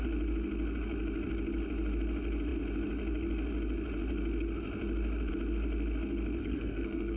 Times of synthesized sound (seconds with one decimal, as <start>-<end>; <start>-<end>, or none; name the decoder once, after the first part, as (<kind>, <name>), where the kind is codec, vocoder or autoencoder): 6.4-7.2 (codec, SNAC)